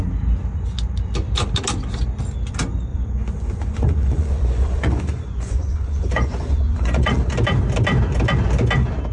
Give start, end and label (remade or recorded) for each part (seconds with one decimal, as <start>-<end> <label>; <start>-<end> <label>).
0.0-2.9 recorded; 2.9-7.3 remade; 7.3-9.1 recorded